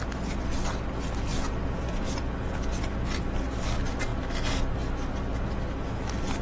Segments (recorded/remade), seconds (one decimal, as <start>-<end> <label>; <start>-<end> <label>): 0.0-1.3 recorded; 1.3-2.1 remade; 2.1-6.4 recorded